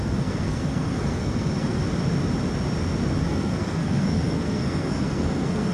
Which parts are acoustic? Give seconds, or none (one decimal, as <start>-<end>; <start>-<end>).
1.8-3.2